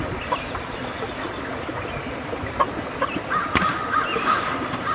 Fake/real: fake